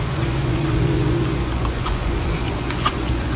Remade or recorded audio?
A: remade